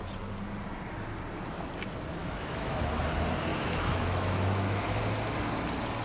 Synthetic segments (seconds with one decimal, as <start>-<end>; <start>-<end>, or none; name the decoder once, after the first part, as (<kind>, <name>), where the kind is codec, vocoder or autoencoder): 2.2-2.8 (autoencoder, DAC-VAE); 3.5-5.0

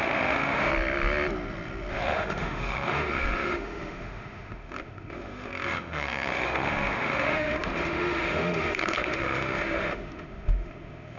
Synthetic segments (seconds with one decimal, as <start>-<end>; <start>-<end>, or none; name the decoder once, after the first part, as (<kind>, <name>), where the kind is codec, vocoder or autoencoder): 0.0-0.7 (autoencoder, DAC-VAE); 1.9-11.2